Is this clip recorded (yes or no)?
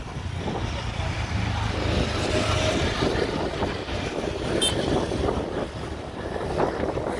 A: yes